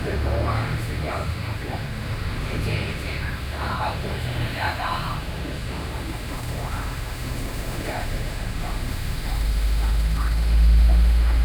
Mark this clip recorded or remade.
remade